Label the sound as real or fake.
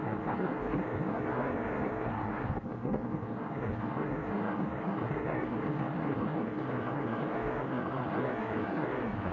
fake